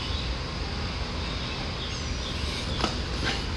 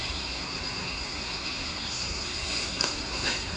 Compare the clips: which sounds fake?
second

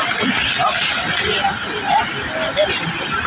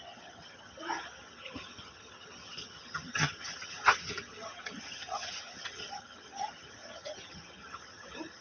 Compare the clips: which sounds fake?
second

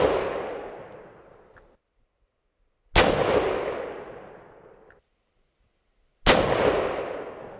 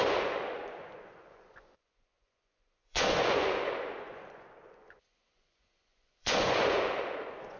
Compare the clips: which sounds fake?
second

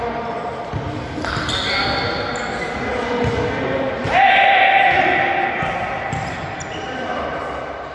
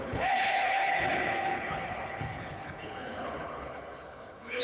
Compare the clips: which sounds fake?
second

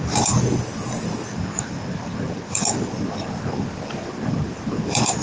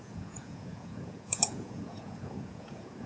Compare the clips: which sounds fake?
second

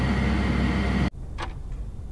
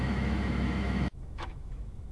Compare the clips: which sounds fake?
second